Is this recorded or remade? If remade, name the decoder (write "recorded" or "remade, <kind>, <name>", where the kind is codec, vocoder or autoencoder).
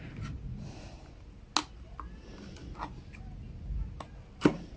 recorded